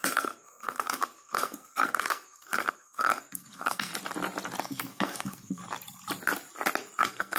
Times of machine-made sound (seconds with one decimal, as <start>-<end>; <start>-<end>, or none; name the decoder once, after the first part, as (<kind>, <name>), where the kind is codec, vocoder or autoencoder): 0.0-3.9 (codec, SNAC); 4.6-5.6; 7.0-7.4